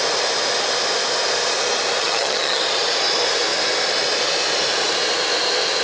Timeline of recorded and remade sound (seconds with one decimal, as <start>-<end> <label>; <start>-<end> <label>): 0.0-2.0 recorded; 2.0-2.6 remade; 2.6-5.8 recorded